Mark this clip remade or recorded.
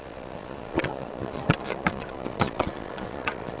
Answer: remade